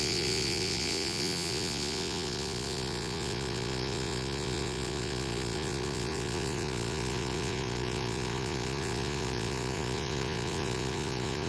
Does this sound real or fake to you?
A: fake